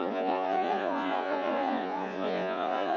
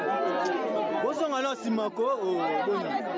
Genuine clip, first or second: second